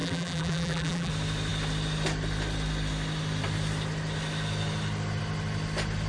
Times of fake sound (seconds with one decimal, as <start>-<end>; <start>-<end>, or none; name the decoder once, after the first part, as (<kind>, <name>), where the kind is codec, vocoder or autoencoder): 0.0-1.1 (vocoder, BigVGAN v2)